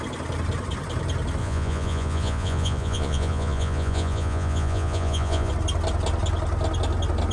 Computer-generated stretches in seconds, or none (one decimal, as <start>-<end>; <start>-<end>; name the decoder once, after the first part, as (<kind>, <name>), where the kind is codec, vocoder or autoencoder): 1.4-5.5 (vocoder, Vocos)